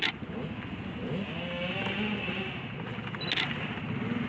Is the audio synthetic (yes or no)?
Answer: no